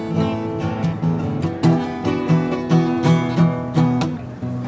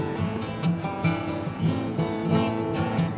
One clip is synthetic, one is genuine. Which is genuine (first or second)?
first